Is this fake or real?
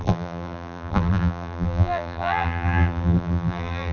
fake